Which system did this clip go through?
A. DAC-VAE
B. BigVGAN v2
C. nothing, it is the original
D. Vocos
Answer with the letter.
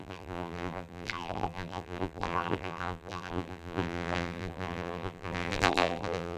B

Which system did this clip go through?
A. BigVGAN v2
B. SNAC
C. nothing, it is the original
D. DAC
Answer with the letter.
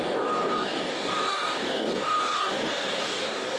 D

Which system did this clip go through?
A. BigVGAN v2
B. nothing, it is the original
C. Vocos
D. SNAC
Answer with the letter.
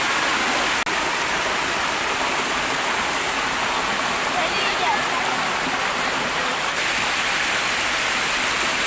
B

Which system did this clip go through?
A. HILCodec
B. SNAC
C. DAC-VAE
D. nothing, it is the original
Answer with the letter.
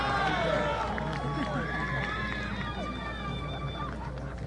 D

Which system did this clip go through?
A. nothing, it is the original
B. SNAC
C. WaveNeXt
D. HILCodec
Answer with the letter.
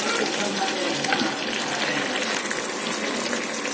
A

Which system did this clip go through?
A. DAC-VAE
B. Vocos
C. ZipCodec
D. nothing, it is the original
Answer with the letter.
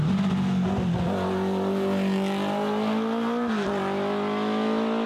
D